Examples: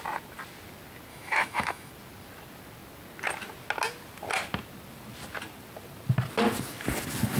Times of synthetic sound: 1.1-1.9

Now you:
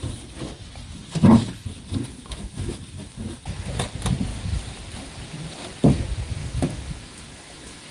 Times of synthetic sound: 2.1-2.8; 6.4-7.9

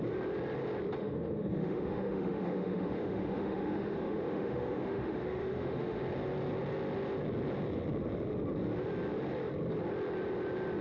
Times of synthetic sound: 1.0-6.0

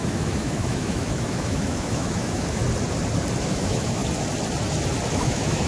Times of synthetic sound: 0.0-2.6; 3.4-4.0; 5.1-5.7

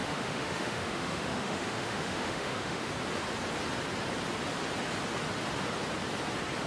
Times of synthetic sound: 0.0-2.9

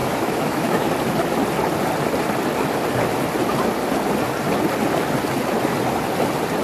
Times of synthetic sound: 0.0-0.9

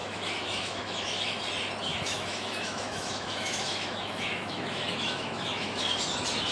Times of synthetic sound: 0.0-1.4; 1.9-5.8